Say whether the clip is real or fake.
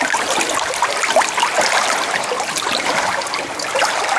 real